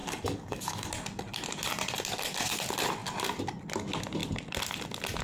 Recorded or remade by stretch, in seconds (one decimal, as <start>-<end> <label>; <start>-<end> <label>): 0.0-0.9 remade; 0.9-5.2 recorded